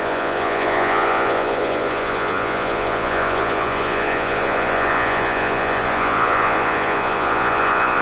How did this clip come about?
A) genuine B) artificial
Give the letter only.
B